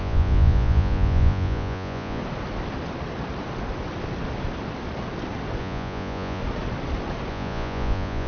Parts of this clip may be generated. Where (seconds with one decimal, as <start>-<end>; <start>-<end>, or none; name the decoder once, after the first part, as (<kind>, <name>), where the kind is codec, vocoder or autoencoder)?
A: 0.0-2.2 (vocoder, Vocos); 5.6-6.4; 7.3-8.3